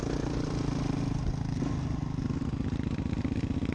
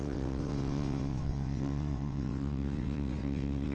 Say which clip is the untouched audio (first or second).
first